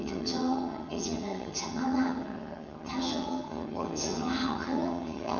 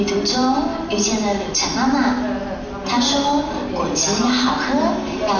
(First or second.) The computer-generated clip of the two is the first